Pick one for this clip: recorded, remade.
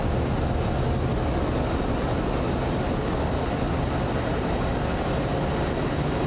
recorded